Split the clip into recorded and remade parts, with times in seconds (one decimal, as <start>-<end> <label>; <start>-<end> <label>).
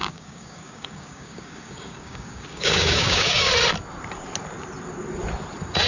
0.0-3.5 remade; 3.5-5.9 recorded